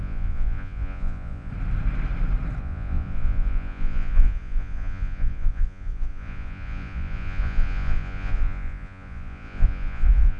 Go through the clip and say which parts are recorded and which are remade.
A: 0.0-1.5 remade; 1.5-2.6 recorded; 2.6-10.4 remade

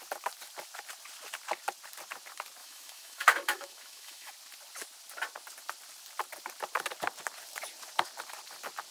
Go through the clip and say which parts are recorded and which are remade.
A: 0.0-2.6 recorded; 2.6-4.3 remade; 4.3-8.9 recorded